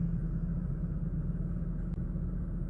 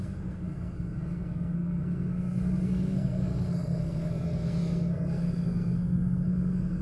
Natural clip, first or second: first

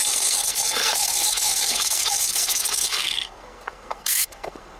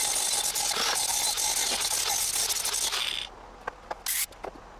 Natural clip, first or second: second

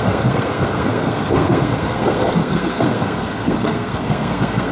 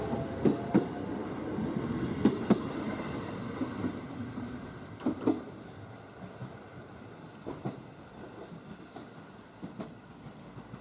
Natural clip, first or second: second